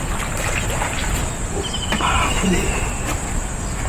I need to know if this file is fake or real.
real